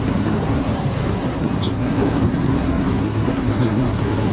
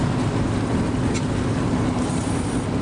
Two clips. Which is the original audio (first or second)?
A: second